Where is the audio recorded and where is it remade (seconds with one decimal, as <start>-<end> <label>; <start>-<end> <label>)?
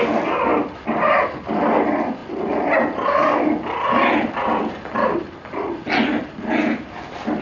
0.0-7.4 recorded